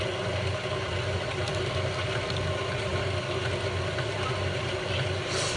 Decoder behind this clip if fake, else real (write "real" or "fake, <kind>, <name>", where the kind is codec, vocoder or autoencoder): real